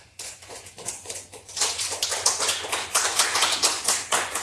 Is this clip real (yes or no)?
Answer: no